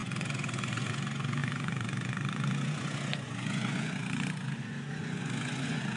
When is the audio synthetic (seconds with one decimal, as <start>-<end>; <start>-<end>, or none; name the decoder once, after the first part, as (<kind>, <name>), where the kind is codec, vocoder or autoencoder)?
0.0-6.0 (vocoder, Vocos)